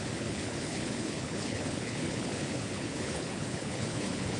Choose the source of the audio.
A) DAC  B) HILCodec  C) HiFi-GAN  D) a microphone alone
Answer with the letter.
B